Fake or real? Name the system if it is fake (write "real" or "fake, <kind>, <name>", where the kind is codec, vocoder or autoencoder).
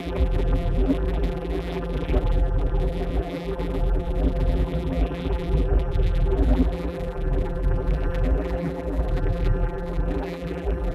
fake, vocoder, BigVGAN v2